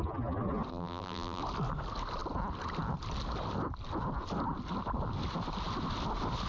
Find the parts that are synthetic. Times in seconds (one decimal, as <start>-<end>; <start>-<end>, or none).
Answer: 0.7-1.4